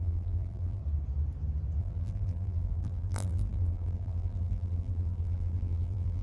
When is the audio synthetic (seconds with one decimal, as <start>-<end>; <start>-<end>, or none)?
0.0-0.8; 1.8-6.2